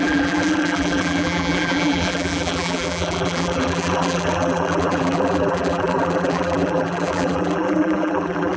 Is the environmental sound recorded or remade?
remade